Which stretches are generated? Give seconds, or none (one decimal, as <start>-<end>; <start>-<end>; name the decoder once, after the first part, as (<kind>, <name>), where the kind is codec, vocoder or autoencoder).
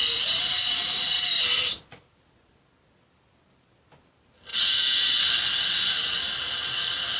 0.0-1.1 (vocoder, Vocos); 1.5-2.5